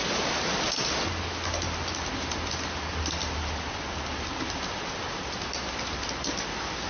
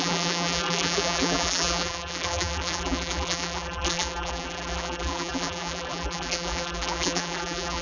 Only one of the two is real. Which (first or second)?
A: first